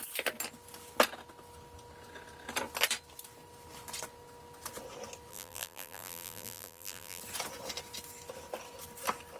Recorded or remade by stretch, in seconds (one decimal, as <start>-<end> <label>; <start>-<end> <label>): 0.0-5.3 recorded; 5.3-7.2 remade; 7.2-9.4 recorded

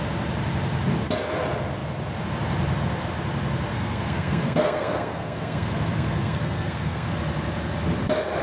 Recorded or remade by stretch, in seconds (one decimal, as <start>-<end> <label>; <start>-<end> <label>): 0.0-3.7 recorded; 3.7-7.1 remade; 7.1-8.4 recorded

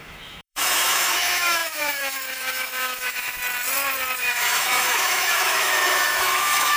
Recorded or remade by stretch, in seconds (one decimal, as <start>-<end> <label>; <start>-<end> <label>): 0.0-3.4 remade; 3.4-4.2 recorded; 4.2-6.8 remade

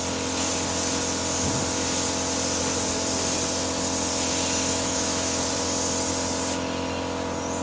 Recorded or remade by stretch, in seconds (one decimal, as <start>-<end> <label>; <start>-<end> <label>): 0.0-4.7 recorded; 4.7-5.4 remade; 5.4-7.6 recorded

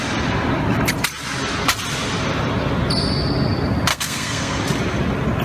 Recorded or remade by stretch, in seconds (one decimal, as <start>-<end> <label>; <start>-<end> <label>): 0.0-3.9 recorded; 3.9-4.6 remade; 4.6-5.4 recorded

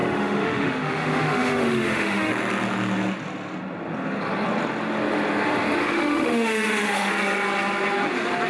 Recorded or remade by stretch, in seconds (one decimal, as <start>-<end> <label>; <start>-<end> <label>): 0.0-2.3 remade; 2.3-5.8 recorded; 5.8-7.1 remade; 7.1-8.5 recorded

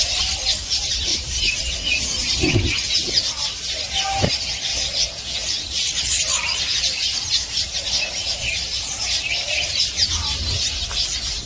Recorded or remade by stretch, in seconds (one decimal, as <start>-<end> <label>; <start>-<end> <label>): 0.0-1.1 recorded; 1.1-2.7 remade; 2.7-8.2 recorded; 8.2-8.8 remade; 8.8-11.5 recorded

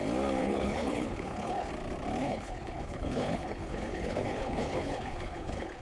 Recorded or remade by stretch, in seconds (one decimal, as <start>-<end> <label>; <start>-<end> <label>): 0.0-0.4 recorded; 0.4-1.7 remade; 1.7-2.2 recorded; 2.2-5.8 remade